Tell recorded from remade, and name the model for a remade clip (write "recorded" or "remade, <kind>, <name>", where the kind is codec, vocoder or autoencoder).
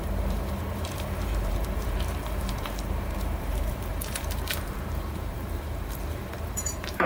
remade, vocoder, BigVGAN v2